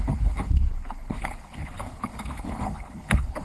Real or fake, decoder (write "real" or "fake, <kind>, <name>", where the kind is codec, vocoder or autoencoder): fake, codec, HILCodec